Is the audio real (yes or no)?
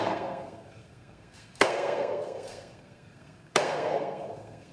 no